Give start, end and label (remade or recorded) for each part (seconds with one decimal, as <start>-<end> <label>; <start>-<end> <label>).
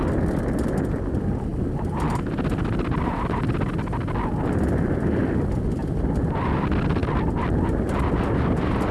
0.0-8.9 recorded